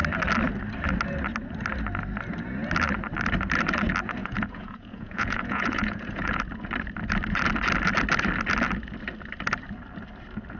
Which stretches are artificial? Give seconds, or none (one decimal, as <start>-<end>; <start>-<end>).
4.2-6.4